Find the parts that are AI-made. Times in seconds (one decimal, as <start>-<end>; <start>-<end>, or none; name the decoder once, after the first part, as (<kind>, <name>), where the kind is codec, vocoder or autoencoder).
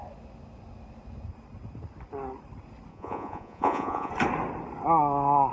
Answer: 2.9-4.1 (vocoder, Vocos)